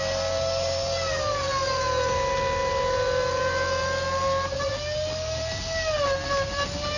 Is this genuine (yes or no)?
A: yes